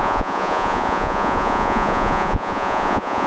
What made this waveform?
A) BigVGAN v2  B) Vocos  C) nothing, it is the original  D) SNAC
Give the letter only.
B